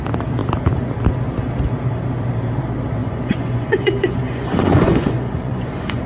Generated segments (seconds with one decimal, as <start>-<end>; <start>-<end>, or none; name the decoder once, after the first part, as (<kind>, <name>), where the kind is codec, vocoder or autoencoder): 3.0-6.1 (vocoder, Vocos)